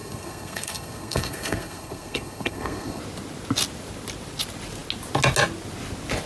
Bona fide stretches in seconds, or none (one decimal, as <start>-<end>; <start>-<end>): 3.0-6.3